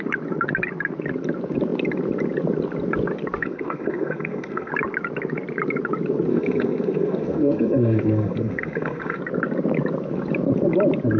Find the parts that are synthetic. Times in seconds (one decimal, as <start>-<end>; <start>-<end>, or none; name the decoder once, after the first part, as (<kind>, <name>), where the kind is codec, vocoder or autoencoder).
3.4-4.7 (codec, SNAC); 6.3-9.2